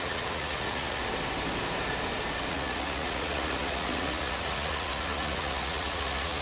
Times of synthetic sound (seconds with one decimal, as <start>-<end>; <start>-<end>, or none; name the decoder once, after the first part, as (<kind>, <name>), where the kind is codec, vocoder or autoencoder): 0.0-1.0 (vocoder, Vocos); 2.5-6.4

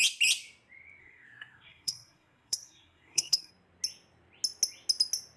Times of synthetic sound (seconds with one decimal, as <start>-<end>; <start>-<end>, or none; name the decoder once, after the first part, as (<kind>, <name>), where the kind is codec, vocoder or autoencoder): 1.0-3.5 (codec, SNAC)